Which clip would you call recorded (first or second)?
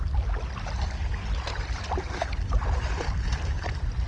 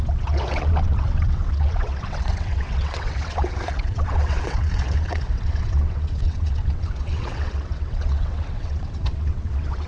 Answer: first